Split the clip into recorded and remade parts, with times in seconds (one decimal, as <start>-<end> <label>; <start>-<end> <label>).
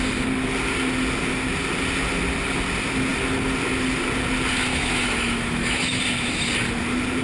0.0-4.7 recorded; 4.7-6.0 remade; 6.0-7.2 recorded